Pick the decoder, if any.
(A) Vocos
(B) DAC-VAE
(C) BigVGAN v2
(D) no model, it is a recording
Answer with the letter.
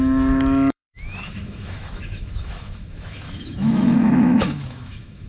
B